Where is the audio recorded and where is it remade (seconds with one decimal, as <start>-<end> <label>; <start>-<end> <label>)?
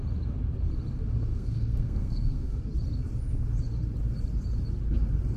0.0-1.3 recorded; 1.3-2.6 remade; 2.6-5.4 recorded